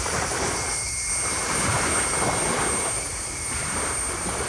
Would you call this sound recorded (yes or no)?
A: yes